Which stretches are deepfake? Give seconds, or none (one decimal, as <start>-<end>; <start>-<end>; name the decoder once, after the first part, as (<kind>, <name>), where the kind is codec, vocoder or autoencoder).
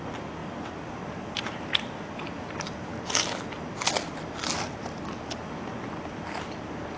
none